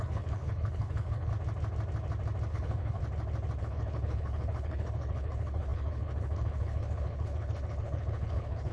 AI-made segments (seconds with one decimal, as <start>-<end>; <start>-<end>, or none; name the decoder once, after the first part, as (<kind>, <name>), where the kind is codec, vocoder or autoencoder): 0.0-1.3 (codec, HILCodec); 2.5-3.0; 3.6-8.7

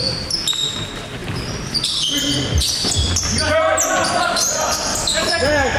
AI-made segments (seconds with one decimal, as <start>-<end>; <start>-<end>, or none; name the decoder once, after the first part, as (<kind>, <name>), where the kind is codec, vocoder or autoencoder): 4.9-5.8 (codec, DAC)